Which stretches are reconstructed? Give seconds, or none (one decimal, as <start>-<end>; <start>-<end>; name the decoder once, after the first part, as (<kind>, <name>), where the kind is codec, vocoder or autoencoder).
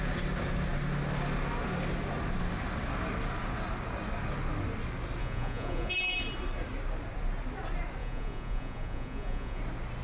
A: 5.2-5.9 (vocoder, Vocos); 8.0-9.6